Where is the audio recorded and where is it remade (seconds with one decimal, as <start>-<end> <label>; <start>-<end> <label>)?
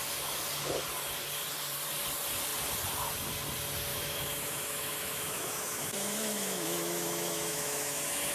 0.0-3.9 recorded; 3.9-8.3 remade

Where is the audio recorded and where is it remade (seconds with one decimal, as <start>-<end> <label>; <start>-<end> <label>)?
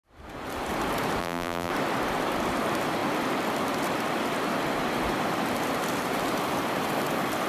0.0-1.2 recorded; 1.2-1.7 remade; 1.7-7.5 recorded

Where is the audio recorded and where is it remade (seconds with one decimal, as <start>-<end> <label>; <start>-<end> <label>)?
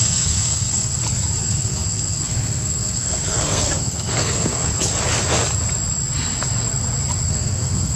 0.0-0.9 remade; 0.9-1.4 recorded; 1.4-4.7 remade; 4.7-7.3 recorded; 7.3-8.0 remade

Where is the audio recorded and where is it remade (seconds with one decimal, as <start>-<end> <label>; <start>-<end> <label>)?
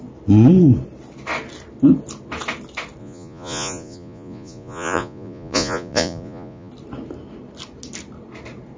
0.0-3.0 recorded; 3.0-6.7 remade; 6.7-8.8 recorded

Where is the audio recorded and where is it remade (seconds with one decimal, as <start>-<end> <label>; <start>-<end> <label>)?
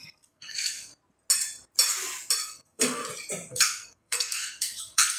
0.0-0.9 remade; 0.9-2.4 recorded; 2.4-3.0 remade; 3.0-3.5 recorded; 3.5-5.2 remade